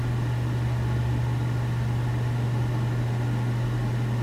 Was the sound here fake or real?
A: real